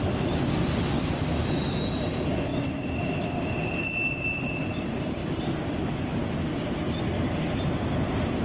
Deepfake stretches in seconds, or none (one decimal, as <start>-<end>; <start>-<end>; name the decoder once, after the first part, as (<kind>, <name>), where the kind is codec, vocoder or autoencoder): 0.0-2.5 (vocoder, BigVGAN v2); 4.8-5.2; 7.4-8.4